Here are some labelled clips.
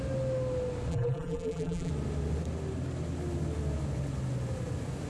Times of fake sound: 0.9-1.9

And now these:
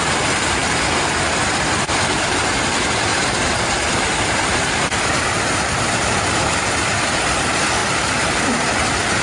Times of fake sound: 3.1-6.4; 7.8-8.7

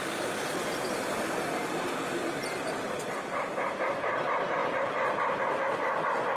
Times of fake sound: 0.0-4.6; 5.4-6.4